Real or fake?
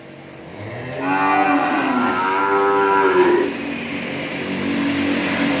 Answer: real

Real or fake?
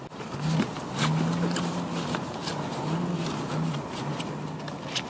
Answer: real